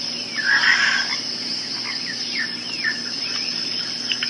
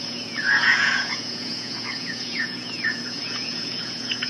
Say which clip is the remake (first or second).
second